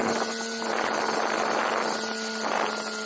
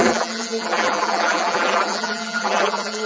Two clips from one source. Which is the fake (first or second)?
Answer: second